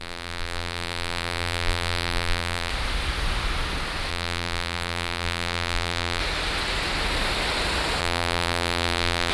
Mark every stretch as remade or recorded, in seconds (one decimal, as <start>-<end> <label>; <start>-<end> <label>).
0.0-2.7 remade; 2.7-4.1 recorded; 4.1-6.2 remade; 6.2-8.0 recorded; 8.0-9.3 remade